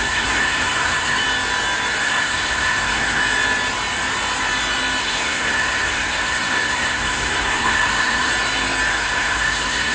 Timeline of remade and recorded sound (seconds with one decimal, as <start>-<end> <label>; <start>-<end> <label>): 0.0-1.2 remade; 1.2-2.0 recorded; 2.0-3.2 remade; 3.2-5.0 recorded; 5.0-8.3 remade; 8.3-8.9 recorded; 8.9-9.9 remade